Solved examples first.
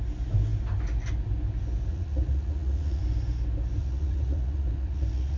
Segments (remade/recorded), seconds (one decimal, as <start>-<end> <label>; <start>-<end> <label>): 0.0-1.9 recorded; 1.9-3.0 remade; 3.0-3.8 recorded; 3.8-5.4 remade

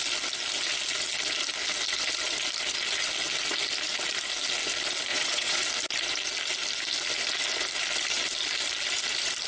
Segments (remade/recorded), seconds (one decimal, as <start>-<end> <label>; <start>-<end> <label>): 0.0-5.1 recorded; 5.1-5.6 remade; 5.6-9.5 recorded

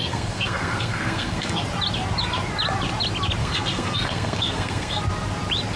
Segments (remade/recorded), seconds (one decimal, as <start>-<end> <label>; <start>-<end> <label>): 0.0-1.6 remade; 1.6-3.4 recorded; 3.4-5.0 remade; 5.0-5.8 recorded

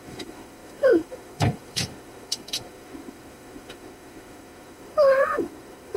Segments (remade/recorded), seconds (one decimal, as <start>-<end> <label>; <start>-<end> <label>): 0.0-6.0 remade